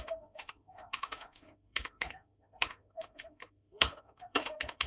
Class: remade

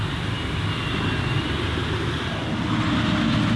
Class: recorded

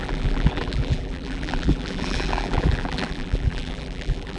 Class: remade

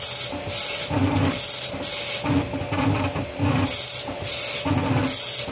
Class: recorded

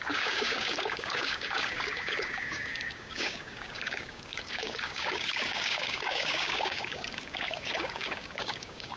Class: remade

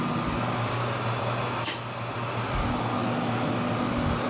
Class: recorded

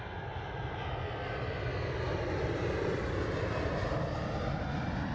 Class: recorded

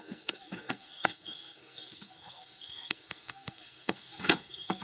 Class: remade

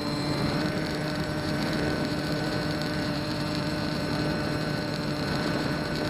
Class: remade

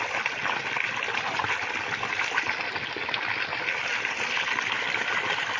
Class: recorded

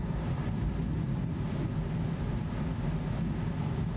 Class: recorded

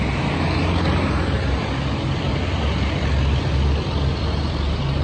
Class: recorded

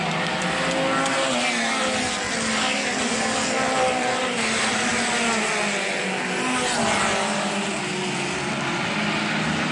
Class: recorded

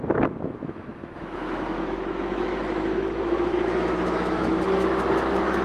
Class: remade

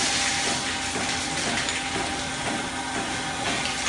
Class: recorded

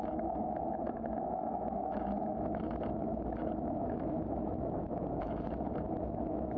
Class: remade